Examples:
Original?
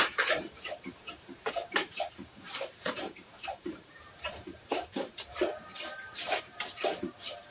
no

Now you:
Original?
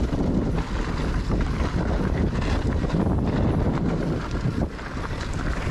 yes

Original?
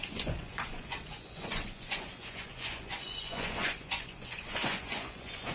no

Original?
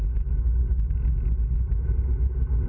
yes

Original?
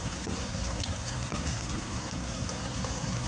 no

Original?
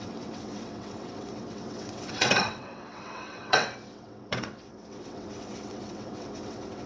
no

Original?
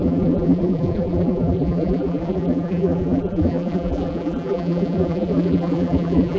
no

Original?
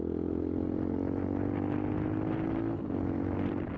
yes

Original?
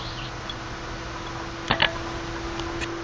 yes